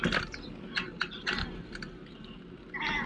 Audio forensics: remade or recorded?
recorded